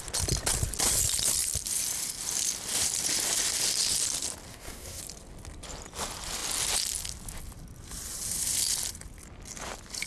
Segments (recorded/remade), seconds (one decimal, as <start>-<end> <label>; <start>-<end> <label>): 0.0-4.5 recorded; 4.5-5.0 remade; 5.0-10.1 recorded